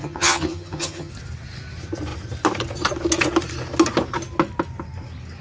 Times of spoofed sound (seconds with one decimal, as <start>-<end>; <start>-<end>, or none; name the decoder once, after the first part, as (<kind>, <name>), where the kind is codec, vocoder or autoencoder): 0.0-1.1 (vocoder, HiFi-GAN)